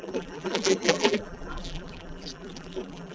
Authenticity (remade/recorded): remade